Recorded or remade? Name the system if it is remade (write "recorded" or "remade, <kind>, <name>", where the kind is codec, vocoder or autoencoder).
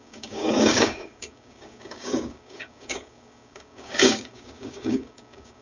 remade, codec, DAC